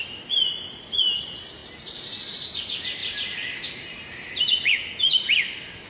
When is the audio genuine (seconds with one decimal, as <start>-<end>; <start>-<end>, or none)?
0.5-3.0; 4.7-5.9